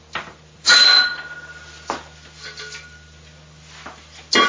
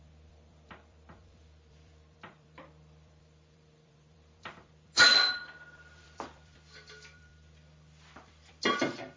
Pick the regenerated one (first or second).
second